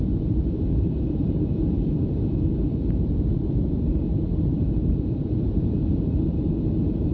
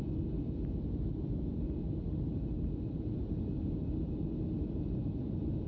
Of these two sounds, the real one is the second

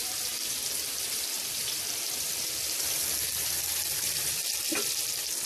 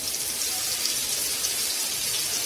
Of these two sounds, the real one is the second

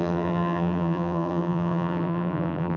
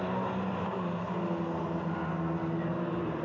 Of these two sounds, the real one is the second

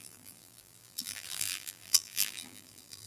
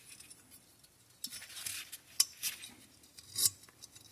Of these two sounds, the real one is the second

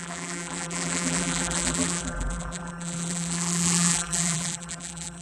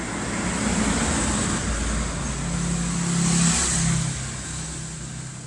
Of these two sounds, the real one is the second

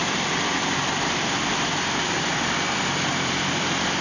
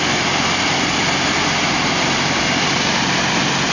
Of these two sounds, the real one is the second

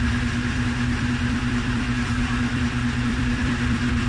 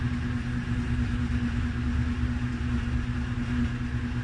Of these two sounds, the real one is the second